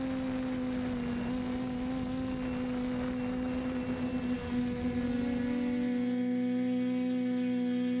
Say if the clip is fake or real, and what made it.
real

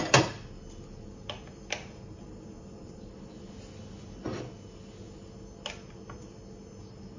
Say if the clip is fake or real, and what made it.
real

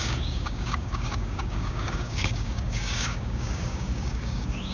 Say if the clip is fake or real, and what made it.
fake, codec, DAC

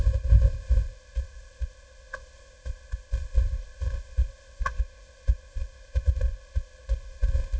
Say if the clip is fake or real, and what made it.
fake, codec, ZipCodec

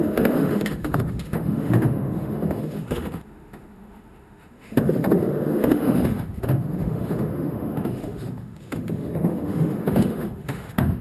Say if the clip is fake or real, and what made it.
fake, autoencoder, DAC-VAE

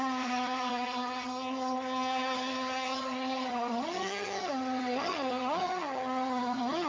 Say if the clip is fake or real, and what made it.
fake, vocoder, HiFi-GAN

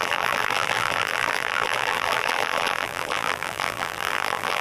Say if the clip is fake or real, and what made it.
fake, vocoder, BigVGAN v2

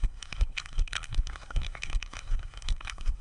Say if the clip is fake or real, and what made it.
fake, codec, SNAC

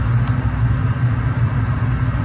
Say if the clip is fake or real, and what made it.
real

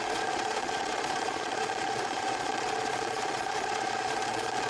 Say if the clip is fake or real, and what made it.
fake, vocoder, Vocos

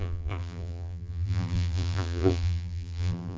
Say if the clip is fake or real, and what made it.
fake, vocoder, BigVGAN v2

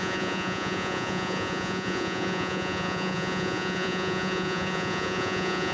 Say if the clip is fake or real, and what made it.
fake, vocoder, Vocos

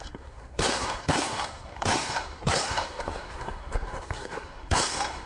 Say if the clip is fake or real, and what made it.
fake, codec, SNAC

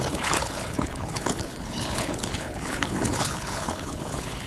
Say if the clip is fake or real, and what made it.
fake, codec, HILCodec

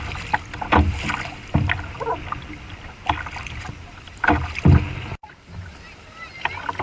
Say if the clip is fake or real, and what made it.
real